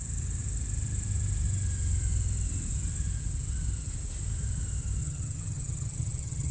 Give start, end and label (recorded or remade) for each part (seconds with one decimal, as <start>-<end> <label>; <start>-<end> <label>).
0.0-5.0 recorded; 5.0-6.5 remade